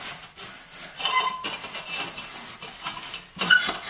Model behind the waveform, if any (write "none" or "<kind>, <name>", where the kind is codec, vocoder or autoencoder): none